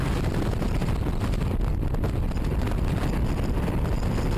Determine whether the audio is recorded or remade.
recorded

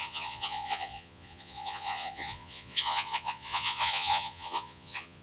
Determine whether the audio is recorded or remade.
remade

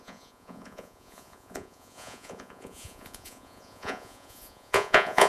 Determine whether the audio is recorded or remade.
remade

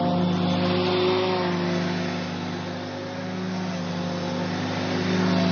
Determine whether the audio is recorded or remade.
recorded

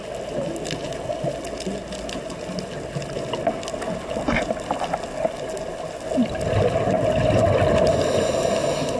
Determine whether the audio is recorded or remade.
recorded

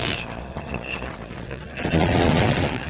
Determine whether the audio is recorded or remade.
remade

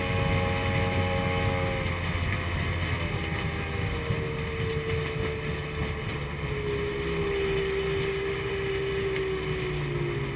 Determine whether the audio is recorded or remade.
recorded